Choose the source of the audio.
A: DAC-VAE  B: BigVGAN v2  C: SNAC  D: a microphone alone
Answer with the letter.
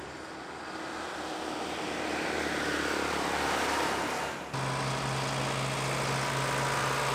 D